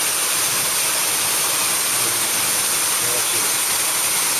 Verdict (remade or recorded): recorded